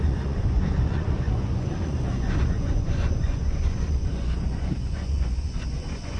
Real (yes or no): no